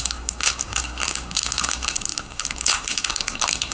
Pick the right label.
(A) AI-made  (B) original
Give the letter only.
A